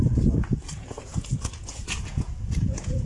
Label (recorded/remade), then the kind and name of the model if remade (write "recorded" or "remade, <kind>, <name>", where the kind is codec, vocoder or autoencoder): remade, vocoder, Vocos